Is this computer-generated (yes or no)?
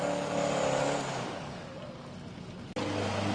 no